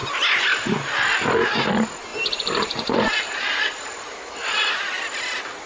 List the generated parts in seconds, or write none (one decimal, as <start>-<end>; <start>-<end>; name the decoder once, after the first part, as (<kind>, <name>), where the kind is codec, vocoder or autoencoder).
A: 2.1-4.7 (vocoder, BigVGAN v2)